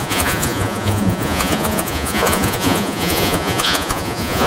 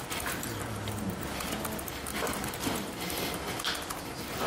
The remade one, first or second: first